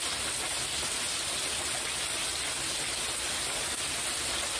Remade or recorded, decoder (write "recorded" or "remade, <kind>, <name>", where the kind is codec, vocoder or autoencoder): recorded